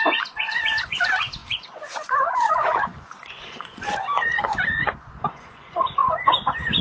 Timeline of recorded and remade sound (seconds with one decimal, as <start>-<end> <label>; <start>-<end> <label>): 0.0-6.8 remade

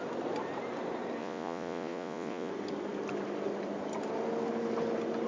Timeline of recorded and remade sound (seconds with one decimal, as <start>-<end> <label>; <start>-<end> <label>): 0.0-1.2 recorded; 1.2-2.5 remade; 2.5-5.3 recorded

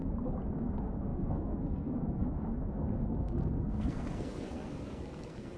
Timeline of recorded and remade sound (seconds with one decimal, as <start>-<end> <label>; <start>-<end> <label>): 0.0-0.5 recorded; 0.5-5.6 remade

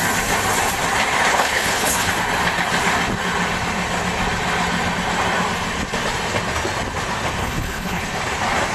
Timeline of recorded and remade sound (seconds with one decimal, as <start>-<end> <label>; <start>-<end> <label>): 0.0-1.3 recorded; 1.3-2.1 remade; 2.1-7.4 recorded; 7.4-8.0 remade; 8.0-8.7 recorded

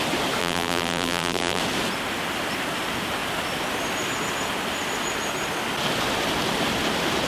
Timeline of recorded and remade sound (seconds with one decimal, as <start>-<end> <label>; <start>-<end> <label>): 0.0-0.4 recorded; 0.4-1.6 remade; 1.6-7.3 recorded

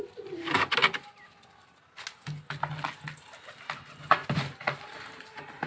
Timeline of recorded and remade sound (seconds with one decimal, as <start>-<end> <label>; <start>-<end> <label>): 0.0-0.8 remade; 0.8-3.8 recorded; 3.8-5.7 remade

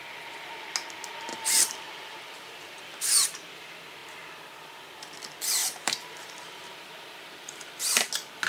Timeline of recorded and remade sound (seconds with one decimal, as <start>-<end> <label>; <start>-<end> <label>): 0.0-1.3 recorded; 1.3-3.0 remade; 3.0-5.6 recorded; 5.6-8.1 remade; 8.1-8.5 recorded

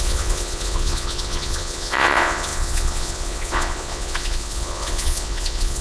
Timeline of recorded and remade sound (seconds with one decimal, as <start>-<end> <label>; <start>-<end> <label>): 0.0-5.8 remade